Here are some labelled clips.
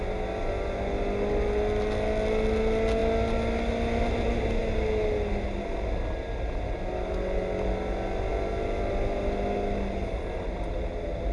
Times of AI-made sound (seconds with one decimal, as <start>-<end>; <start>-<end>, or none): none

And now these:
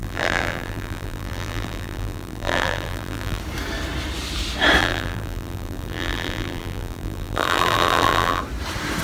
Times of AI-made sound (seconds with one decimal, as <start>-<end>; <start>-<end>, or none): 0.0-3.4; 4.8-8.4

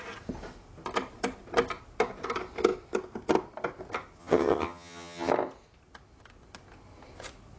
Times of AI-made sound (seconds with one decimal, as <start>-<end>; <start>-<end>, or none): 4.2-5.3